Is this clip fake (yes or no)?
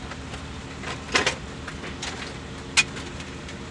no